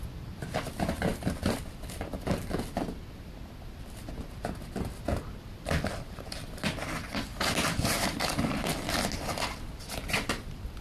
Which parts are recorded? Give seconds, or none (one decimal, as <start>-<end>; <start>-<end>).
0.0-10.8